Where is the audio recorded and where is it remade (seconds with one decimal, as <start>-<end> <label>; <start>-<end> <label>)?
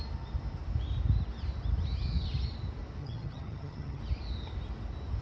0.0-3.0 recorded; 3.0-4.0 remade; 4.0-5.2 recorded